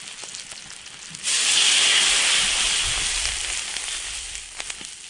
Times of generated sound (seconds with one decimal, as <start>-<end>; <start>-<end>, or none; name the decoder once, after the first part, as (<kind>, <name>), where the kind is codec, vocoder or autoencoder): none

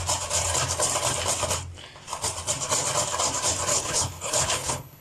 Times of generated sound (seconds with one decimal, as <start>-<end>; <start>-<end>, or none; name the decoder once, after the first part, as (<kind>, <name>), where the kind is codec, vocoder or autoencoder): 3.7-5.0 (codec, HILCodec)